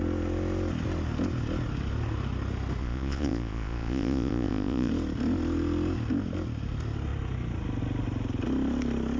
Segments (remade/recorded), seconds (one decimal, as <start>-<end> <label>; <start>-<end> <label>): 0.0-2.8 recorded; 2.8-4.9 remade; 4.9-9.2 recorded